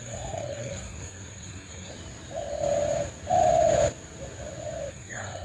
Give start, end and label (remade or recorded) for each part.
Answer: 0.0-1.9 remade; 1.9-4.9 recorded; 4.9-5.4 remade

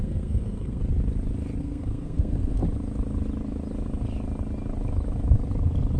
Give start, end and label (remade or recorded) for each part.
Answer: 0.0-0.8 remade; 0.8-1.6 recorded; 1.6-2.6 remade; 2.6-6.0 recorded

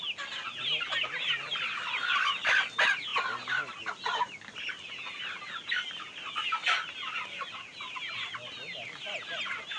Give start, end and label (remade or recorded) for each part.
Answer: 0.0-9.8 recorded

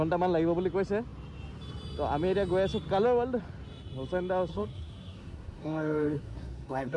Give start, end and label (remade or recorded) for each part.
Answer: 0.0-4.5 recorded; 4.5-7.0 remade

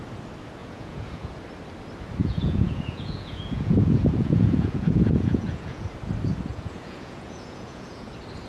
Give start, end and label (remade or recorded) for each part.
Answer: 0.0-0.6 recorded; 0.6-1.3 remade; 1.3-2.2 recorded; 2.2-5.9 remade; 5.9-6.5 recorded; 6.5-8.1 remade; 8.1-8.5 recorded

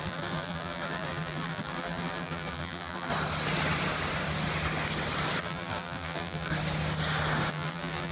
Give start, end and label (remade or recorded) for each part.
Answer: 0.0-3.1 remade; 3.1-5.4 recorded; 5.4-6.5 remade; 6.5-7.5 recorded; 7.5-8.1 remade